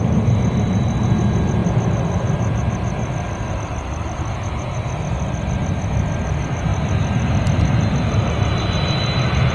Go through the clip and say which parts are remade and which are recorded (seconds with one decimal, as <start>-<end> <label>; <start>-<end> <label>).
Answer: 0.0-9.5 recorded